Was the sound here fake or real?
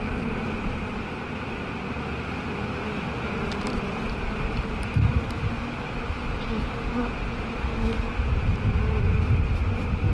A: real